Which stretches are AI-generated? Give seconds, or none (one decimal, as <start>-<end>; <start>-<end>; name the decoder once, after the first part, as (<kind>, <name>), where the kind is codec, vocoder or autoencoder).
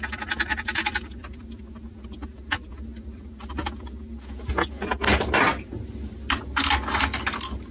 none